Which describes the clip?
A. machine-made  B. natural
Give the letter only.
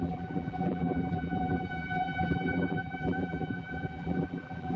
A